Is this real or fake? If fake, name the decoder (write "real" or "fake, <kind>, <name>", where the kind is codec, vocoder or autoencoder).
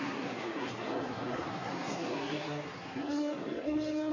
fake, codec, SNAC